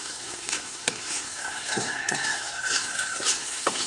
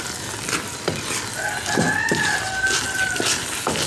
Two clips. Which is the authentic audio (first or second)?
second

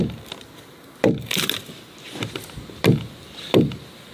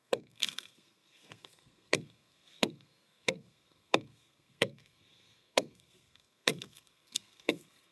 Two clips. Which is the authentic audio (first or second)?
first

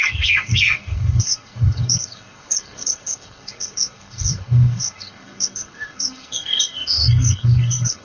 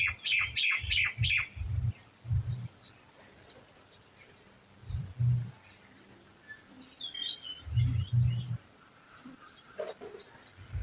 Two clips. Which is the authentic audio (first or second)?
second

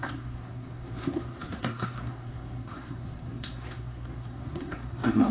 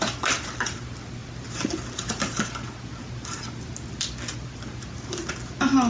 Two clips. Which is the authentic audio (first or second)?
second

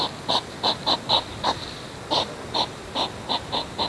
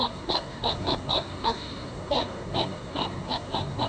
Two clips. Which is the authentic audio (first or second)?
first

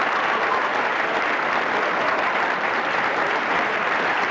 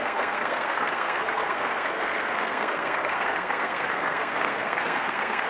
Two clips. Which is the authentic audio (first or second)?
first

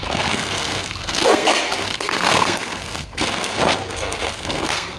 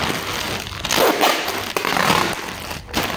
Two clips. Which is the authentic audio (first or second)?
second